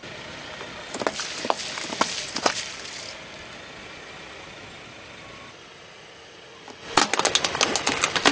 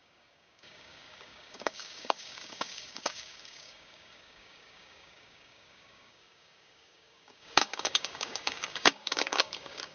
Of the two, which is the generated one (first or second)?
second